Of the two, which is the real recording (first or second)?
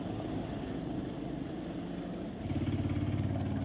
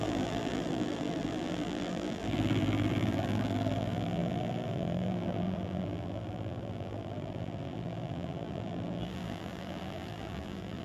first